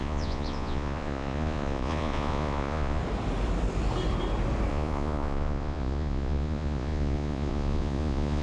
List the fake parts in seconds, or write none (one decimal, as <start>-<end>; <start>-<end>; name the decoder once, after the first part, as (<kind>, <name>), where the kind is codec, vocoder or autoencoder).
0.0-3.0 (vocoder, Vocos); 4.7-8.4